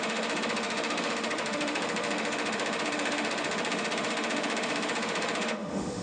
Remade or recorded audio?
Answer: remade